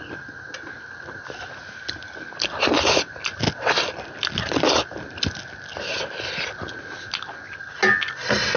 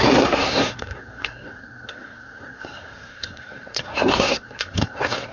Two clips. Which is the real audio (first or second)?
first